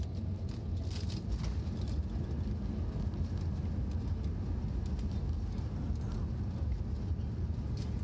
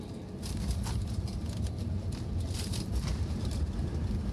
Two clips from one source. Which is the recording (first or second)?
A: first